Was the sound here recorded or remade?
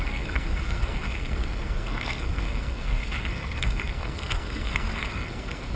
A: remade